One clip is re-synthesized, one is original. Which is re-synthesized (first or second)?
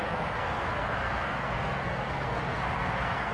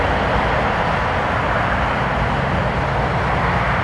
first